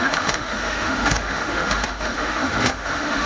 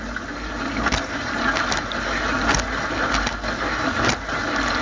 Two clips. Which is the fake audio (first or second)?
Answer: first